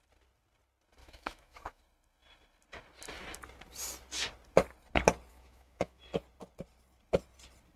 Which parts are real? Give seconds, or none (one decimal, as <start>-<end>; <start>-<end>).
0.0-1.0; 1.8-5.3; 6.0-7.8